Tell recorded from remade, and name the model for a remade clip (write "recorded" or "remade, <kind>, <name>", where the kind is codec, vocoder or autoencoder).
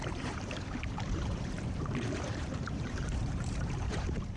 remade, vocoder, BigVGAN v2